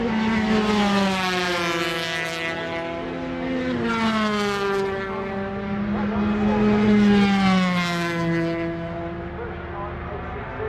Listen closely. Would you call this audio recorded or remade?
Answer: recorded